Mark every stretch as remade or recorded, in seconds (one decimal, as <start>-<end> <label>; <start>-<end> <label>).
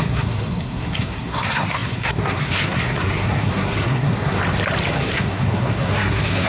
0.0-4.4 remade; 4.4-5.0 recorded; 5.0-6.5 remade